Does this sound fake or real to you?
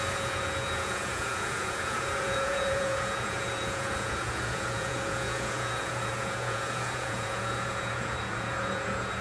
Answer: fake